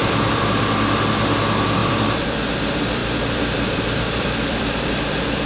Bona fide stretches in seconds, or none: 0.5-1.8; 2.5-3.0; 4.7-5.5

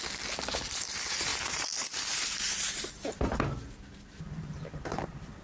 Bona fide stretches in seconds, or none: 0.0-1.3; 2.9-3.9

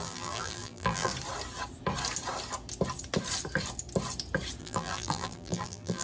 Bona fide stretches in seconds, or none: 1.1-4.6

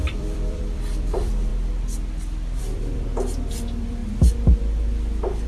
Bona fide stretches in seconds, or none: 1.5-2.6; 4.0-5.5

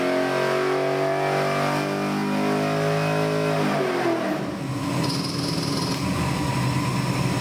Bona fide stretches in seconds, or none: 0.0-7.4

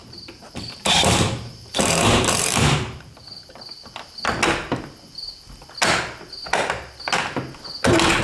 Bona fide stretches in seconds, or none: 3.6-8.2